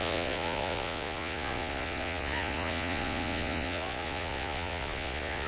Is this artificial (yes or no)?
yes